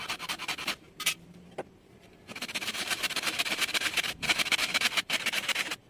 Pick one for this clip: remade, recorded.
remade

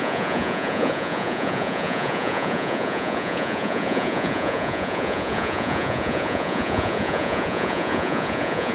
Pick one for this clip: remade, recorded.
remade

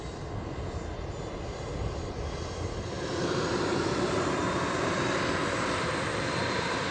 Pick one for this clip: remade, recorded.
remade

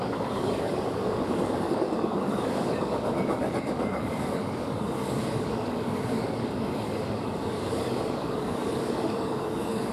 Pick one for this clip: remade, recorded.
remade